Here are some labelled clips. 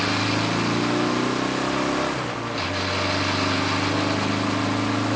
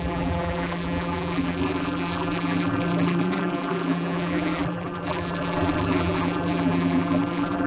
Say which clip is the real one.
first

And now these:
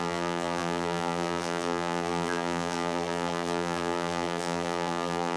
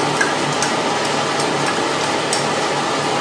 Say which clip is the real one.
second